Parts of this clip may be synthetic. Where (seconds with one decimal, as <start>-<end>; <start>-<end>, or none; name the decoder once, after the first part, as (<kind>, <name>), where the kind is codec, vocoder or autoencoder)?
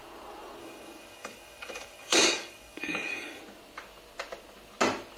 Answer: 0.6-3.4 (codec, DAC)